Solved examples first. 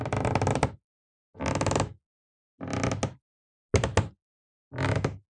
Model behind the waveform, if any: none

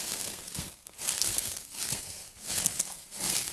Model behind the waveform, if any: codec, SNAC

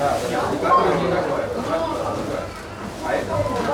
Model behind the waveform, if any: none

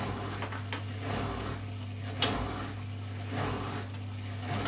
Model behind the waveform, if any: none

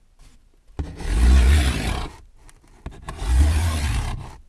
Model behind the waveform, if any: none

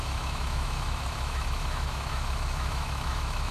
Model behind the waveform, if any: autoencoder, DAC-VAE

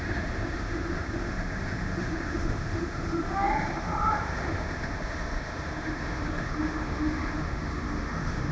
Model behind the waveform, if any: autoencoder, DAC-VAE